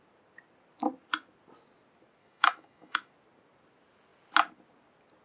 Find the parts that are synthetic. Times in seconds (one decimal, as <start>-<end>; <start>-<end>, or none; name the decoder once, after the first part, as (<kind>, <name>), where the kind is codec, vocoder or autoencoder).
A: 2.2-3.1 (autoencoder, DAC-VAE)